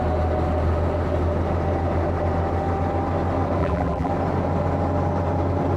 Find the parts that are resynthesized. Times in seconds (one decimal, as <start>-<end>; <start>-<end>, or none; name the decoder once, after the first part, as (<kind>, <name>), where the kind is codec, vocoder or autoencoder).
3.6-4.1 (vocoder, BigVGAN v2)